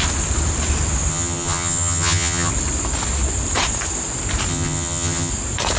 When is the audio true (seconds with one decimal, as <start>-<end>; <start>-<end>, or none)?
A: 0.0-1.1; 2.5-4.5; 5.3-5.8